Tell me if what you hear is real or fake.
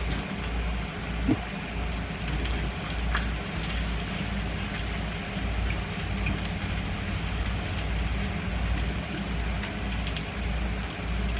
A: real